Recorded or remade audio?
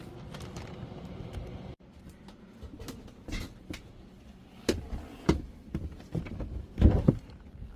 remade